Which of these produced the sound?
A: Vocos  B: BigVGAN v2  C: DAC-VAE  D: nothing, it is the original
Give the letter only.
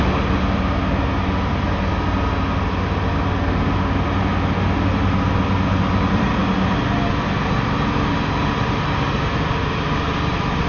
D